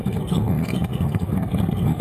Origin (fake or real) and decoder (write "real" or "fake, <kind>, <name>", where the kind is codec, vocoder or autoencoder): fake, codec, SNAC